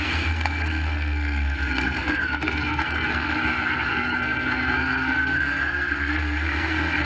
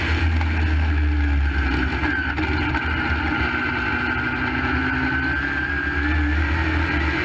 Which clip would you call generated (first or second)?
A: first